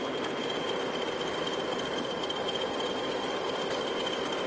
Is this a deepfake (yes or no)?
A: no